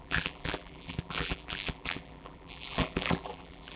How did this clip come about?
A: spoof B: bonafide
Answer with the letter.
A